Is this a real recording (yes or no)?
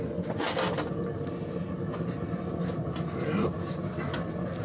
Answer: yes